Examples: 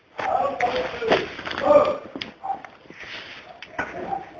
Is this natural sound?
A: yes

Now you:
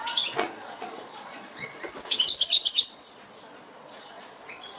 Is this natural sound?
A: no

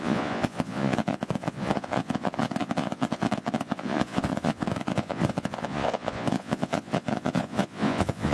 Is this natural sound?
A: no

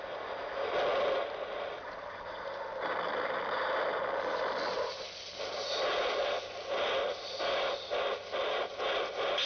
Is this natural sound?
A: yes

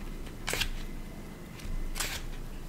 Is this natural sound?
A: yes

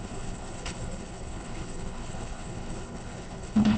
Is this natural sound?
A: no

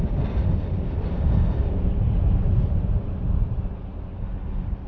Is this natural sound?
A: yes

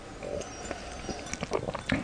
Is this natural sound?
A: yes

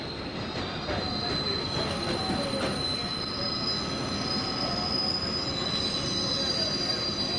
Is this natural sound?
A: yes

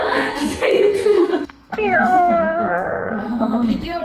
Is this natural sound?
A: no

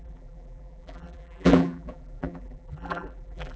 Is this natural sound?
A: no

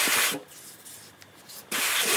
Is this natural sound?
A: yes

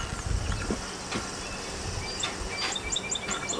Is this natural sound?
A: yes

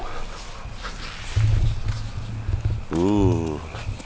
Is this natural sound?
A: yes